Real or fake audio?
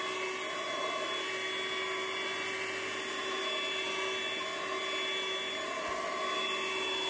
real